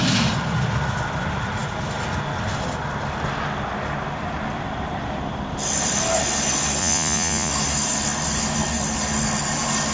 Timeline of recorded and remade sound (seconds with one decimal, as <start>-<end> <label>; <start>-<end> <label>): 0.0-6.8 recorded; 6.8-7.5 remade; 7.5-9.9 recorded